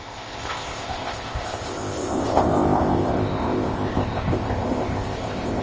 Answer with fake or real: fake